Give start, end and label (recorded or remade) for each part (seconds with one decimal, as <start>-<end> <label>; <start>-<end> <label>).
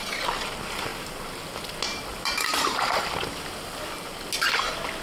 0.0-0.9 recorded; 0.9-1.5 remade; 1.5-1.9 recorded; 1.9-3.1 remade; 3.1-5.0 recorded